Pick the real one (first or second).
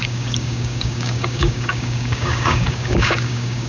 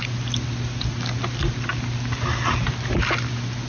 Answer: second